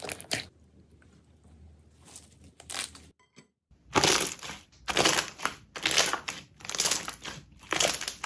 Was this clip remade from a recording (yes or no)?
no